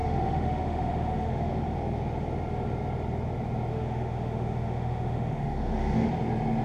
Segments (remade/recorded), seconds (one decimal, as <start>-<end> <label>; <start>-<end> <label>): 0.0-1.6 remade; 1.6-3.7 recorded; 3.7-6.1 remade; 6.1-6.6 recorded